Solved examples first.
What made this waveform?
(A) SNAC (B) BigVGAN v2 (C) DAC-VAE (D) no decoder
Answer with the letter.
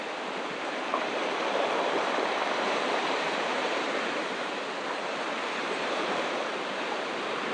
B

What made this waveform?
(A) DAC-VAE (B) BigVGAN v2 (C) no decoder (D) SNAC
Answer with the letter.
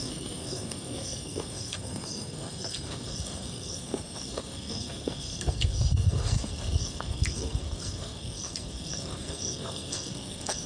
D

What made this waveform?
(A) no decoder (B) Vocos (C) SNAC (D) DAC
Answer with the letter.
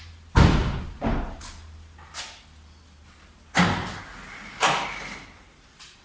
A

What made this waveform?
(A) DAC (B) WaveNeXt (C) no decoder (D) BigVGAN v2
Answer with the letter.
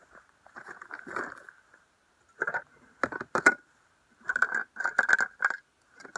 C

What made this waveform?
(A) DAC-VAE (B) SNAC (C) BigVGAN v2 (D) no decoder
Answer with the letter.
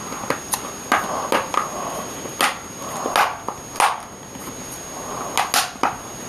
D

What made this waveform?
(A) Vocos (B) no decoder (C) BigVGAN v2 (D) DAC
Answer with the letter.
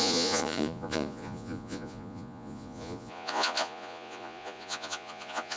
A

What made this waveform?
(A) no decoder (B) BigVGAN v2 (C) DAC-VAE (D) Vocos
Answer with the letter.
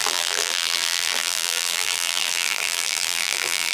B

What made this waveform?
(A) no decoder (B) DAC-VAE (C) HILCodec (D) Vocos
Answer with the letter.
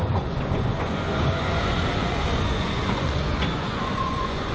D